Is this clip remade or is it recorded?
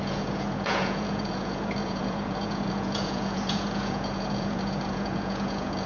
remade